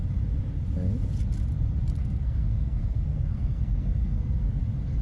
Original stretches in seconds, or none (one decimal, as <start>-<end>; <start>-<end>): 0.0-2.0; 4.6-5.0